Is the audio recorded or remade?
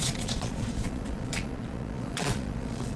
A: remade